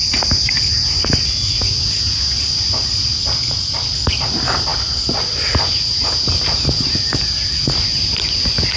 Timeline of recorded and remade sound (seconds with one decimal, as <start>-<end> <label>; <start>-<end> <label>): 0.0-8.8 recorded